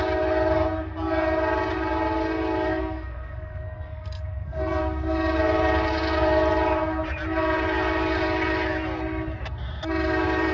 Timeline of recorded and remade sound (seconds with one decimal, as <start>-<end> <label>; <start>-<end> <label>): 0.0-2.7 recorded; 2.7-4.8 remade; 4.8-10.5 recorded